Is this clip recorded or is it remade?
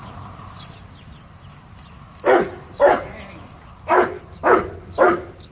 recorded